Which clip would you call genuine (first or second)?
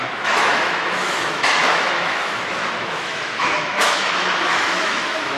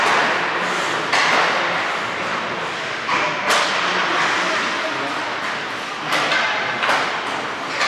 second